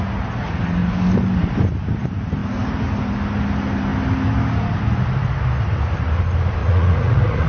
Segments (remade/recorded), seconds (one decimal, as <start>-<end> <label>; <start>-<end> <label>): 0.0-6.6 recorded; 6.6-7.5 remade